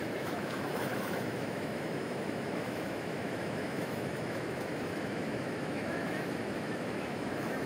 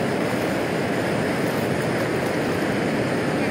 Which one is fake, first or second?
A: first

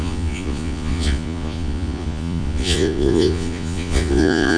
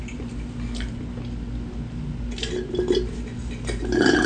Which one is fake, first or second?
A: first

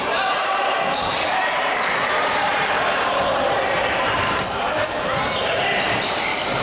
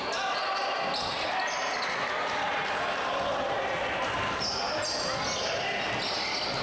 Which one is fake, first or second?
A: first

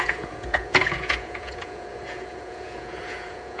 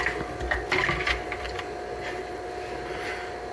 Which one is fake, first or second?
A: first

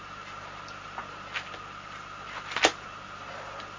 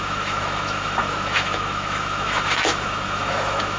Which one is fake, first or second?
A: second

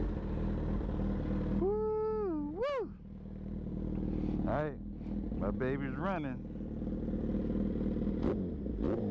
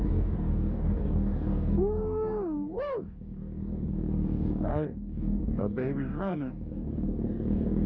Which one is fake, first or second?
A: second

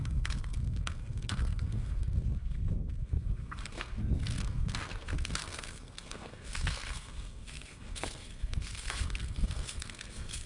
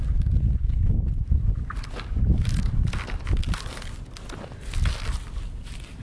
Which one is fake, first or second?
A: first